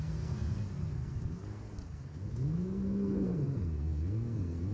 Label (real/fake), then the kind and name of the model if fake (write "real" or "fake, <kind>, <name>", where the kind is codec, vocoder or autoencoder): fake, codec, SNAC